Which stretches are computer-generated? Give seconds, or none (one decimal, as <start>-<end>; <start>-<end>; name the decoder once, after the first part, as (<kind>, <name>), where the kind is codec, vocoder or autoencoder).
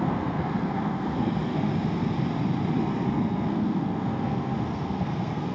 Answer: 0.0-1.7 (codec, SNAC); 2.8-5.5